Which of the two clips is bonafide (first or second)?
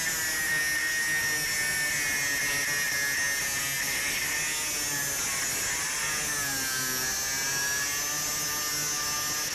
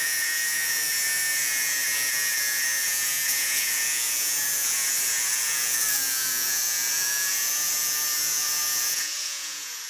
first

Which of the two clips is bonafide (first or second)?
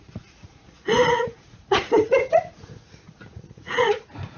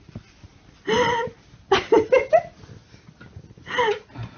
second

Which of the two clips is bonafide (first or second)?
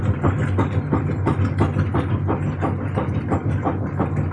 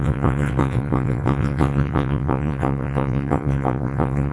first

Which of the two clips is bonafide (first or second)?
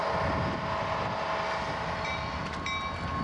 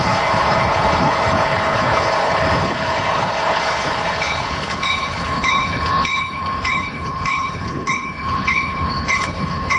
first